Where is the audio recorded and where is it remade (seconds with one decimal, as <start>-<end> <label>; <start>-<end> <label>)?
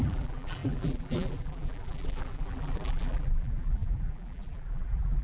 0.0-5.2 remade